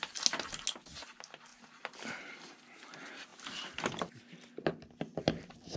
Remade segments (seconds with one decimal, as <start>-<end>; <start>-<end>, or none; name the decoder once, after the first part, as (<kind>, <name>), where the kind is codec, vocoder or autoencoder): 1.5-2.5 (vocoder, BigVGAN v2); 3.3-4.6